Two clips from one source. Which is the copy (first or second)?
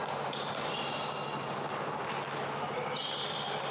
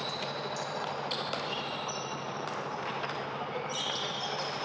second